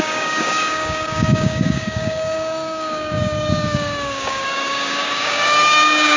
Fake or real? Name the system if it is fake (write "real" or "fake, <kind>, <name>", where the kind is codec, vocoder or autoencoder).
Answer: fake, codec, DAC